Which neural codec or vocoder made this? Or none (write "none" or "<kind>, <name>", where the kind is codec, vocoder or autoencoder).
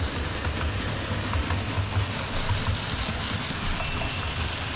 none